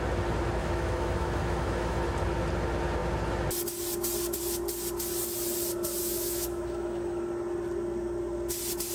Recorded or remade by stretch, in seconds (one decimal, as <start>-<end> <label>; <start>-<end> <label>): 0.0-0.6 recorded; 0.6-2.0 remade; 2.0-6.0 recorded; 6.0-7.2 remade; 7.2-8.9 recorded